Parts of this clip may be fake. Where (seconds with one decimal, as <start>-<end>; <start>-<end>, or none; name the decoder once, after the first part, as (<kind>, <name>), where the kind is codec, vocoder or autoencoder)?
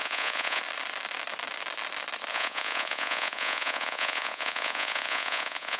0.0-0.6 (vocoder, Vocos); 2.3-5.8